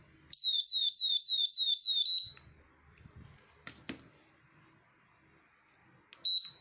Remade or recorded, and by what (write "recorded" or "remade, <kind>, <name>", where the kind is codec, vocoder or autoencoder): recorded